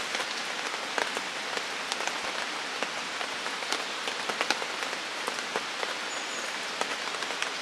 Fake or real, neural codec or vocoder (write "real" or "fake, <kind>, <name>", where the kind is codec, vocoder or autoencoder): real